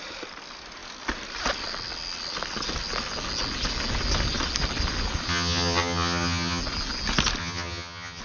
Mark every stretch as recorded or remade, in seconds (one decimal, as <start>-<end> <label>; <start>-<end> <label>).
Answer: 0.0-5.3 recorded; 5.3-6.6 remade; 6.6-7.4 recorded; 7.4-8.2 remade